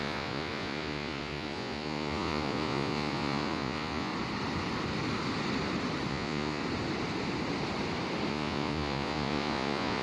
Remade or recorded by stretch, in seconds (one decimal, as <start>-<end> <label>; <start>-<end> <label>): 0.0-4.1 remade; 4.1-6.1 recorded; 6.1-6.6 remade; 6.6-8.3 recorded; 8.3-10.0 remade